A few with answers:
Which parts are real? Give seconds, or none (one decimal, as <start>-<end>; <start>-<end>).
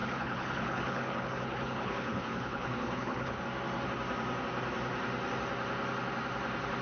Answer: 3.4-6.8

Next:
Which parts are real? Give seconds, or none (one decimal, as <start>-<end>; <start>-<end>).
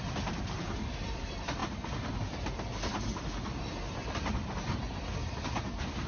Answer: 0.0-6.1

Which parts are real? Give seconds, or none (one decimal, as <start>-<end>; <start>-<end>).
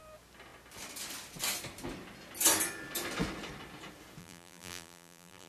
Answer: 0.0-4.2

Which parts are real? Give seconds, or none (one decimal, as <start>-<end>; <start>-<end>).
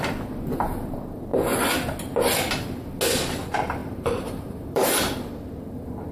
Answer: 0.0-3.8; 5.0-6.1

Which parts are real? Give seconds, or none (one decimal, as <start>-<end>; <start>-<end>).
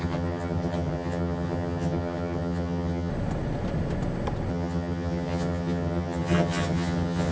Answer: 3.1-4.5